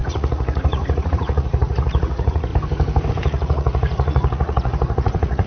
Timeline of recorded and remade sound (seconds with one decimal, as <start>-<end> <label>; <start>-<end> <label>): 0.0-2.5 remade; 2.5-3.1 recorded; 3.1-5.5 remade